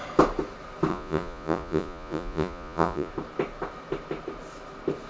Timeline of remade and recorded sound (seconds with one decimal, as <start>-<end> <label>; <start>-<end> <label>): 0.0-0.9 recorded; 0.9-3.1 remade; 3.1-5.1 recorded